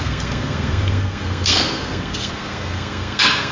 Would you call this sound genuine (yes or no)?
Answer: no